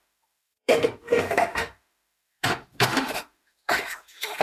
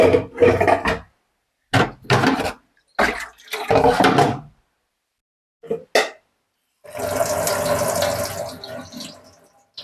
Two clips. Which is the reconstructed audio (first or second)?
first